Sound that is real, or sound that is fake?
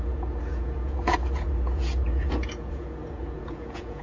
fake